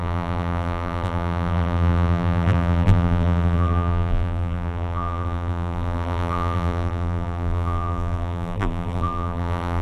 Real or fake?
fake